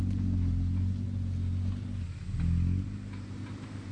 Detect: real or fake real